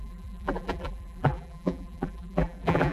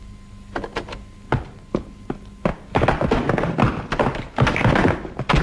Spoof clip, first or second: first